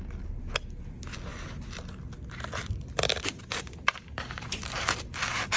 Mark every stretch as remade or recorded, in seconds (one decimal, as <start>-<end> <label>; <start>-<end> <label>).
0.0-1.3 recorded; 1.3-4.7 remade; 4.7-5.6 recorded